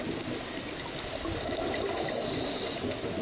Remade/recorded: recorded